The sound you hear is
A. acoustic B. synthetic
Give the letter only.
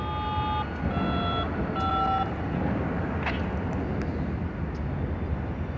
A